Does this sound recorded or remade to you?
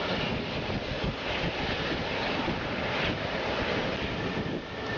recorded